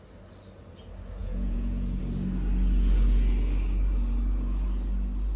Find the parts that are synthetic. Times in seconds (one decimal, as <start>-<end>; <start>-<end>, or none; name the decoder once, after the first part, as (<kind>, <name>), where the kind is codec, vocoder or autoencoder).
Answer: 1.2-2.0 (vocoder, Vocos)